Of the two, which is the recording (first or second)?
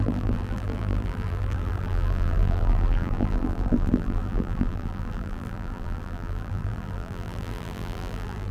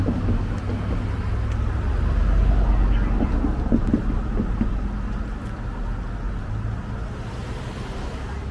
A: second